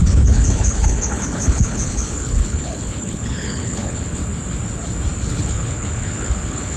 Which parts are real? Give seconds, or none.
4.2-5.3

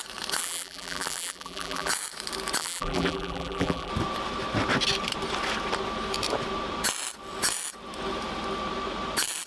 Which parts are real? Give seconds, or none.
0.0-0.4; 1.9-2.6; 3.9-9.5

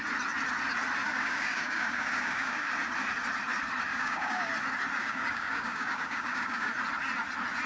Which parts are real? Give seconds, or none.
0.0-1.1; 2.7-3.9; 4.5-5.0; 6.7-7.7

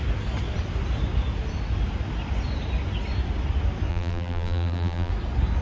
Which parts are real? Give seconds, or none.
0.0-3.9; 5.1-5.6

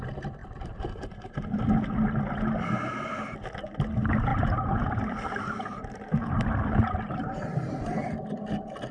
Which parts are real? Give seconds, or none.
0.0-0.4; 1.6-4.3; 8.1-8.9